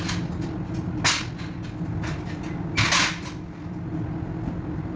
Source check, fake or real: real